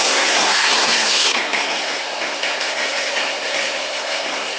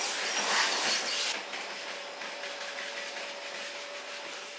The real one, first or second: second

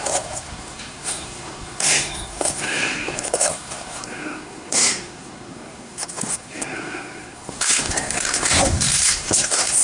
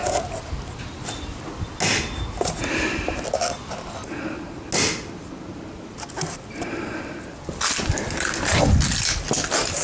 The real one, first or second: second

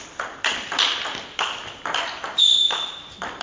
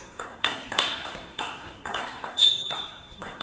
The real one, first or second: first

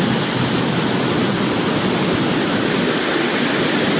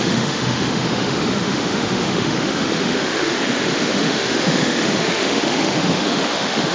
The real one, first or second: first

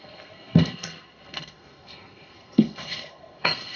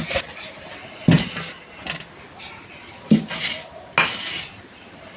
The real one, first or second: second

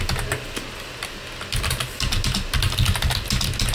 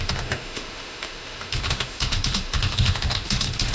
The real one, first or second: first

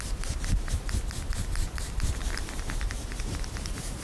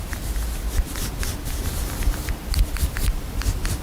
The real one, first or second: second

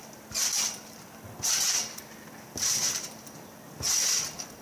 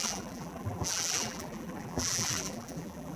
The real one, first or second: first